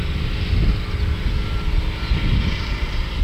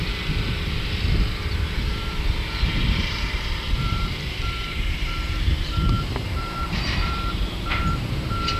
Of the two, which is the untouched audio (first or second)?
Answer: first